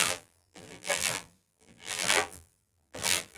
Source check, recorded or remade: remade